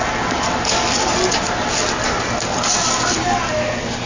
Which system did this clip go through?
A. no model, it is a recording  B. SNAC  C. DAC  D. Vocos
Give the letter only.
A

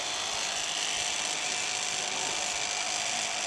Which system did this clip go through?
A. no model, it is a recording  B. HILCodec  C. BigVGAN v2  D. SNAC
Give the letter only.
A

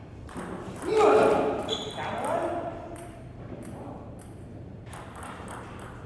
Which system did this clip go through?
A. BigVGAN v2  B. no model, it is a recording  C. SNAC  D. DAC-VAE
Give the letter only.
A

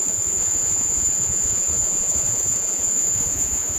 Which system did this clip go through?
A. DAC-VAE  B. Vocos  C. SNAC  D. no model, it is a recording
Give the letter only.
B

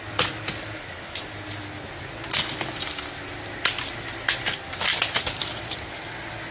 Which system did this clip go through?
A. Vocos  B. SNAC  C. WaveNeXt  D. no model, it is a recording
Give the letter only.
D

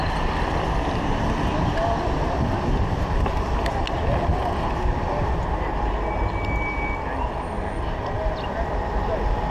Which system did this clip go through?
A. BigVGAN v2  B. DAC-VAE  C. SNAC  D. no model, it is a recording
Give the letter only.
D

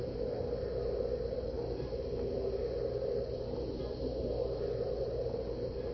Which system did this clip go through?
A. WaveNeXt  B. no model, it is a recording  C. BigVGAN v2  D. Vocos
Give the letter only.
B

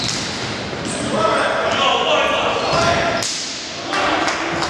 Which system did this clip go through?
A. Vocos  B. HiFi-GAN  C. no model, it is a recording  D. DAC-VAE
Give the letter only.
C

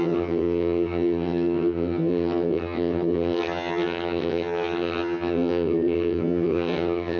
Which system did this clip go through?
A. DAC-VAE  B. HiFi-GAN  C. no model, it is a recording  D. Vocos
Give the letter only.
B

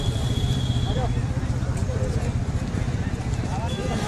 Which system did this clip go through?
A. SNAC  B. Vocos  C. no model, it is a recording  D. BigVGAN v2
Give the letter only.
D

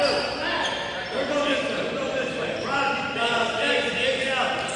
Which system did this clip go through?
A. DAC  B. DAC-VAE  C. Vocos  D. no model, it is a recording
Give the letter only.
D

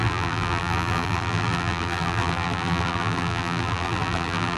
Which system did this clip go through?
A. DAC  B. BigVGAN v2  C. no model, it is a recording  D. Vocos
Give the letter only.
B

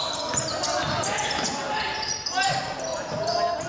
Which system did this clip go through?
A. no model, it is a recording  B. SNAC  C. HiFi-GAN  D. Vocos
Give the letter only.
A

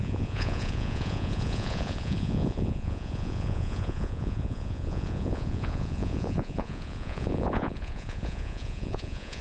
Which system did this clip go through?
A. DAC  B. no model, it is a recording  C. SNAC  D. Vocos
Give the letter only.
D